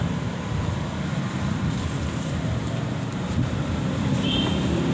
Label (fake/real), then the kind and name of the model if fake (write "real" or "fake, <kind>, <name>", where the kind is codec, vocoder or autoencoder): real